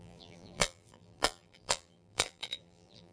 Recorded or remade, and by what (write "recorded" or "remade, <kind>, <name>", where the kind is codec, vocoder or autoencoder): remade, vocoder, BigVGAN v2